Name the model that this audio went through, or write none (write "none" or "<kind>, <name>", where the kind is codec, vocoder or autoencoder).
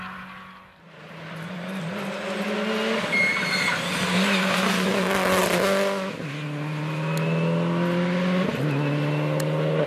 none